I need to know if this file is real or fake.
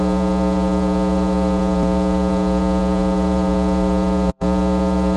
fake